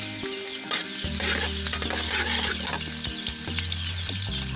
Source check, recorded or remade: remade